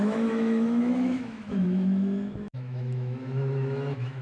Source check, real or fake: fake